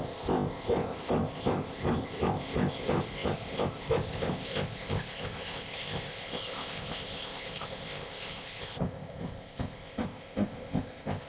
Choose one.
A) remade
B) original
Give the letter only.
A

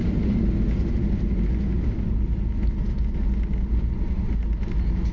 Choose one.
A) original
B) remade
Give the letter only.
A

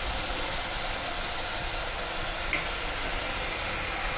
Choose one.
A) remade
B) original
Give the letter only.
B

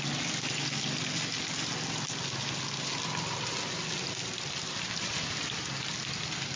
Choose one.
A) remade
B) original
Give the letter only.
B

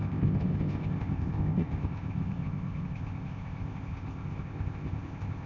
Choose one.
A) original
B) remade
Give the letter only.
B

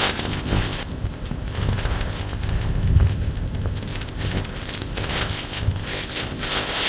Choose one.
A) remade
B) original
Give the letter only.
A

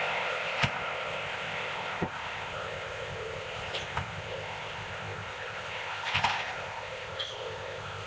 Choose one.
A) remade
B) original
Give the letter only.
A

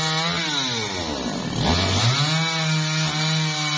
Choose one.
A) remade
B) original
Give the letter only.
B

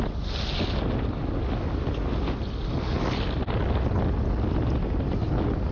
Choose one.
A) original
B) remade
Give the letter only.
A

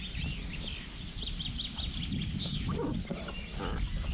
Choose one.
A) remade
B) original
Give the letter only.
B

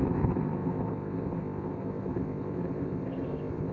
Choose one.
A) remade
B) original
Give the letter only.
A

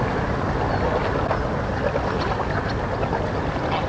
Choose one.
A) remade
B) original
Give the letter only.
B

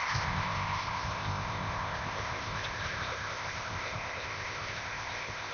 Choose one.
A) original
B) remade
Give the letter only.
B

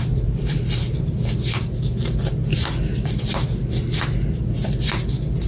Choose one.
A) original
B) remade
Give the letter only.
A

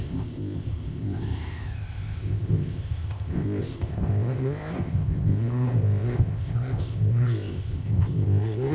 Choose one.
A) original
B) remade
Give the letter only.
B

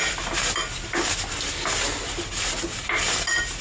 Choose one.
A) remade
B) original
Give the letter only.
B